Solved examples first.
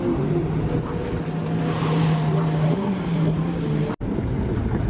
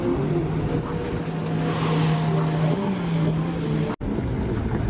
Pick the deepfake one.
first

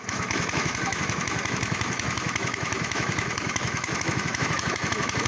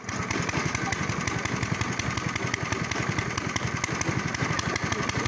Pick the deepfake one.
first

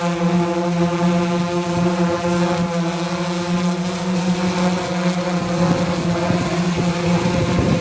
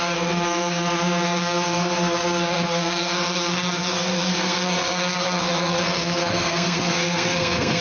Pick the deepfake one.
second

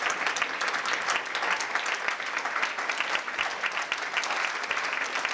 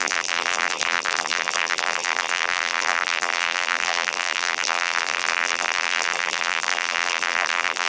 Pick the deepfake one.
second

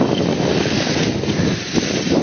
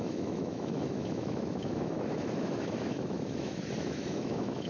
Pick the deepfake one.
second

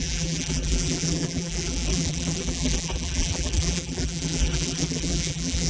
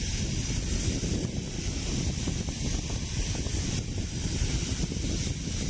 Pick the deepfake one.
first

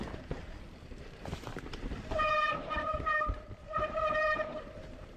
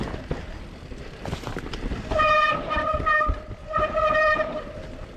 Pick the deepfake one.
first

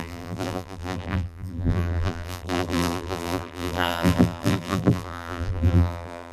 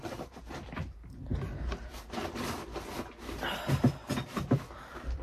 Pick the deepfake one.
first